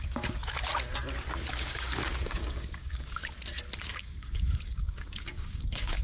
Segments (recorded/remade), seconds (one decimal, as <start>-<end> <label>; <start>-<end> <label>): 0.0-0.7 remade; 0.7-1.5 recorded; 1.5-3.2 remade; 3.2-3.8 recorded; 3.8-6.0 remade